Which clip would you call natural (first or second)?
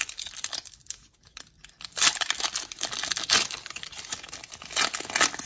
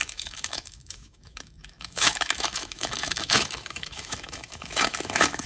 first